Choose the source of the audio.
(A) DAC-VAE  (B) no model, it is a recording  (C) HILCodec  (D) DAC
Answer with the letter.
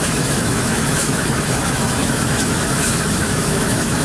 A